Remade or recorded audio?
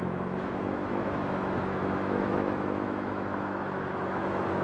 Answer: remade